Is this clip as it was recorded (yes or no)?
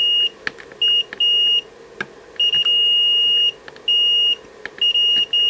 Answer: yes